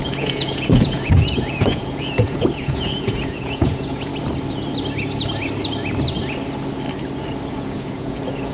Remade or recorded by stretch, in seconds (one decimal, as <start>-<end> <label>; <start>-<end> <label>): 0.0-4.1 remade; 4.1-7.5 recorded; 7.5-8.5 remade